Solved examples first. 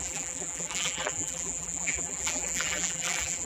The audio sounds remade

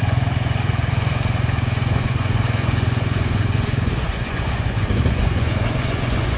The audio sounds remade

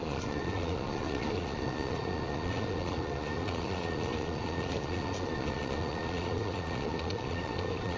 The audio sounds remade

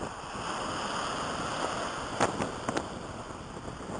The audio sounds recorded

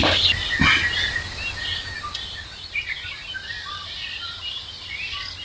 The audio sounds recorded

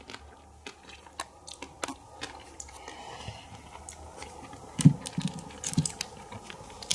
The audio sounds recorded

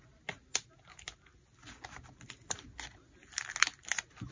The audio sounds recorded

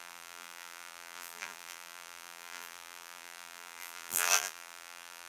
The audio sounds remade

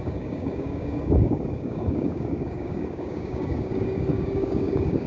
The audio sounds remade